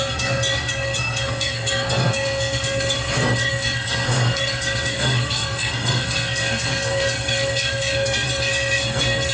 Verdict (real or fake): fake